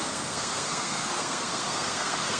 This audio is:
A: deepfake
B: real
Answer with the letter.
A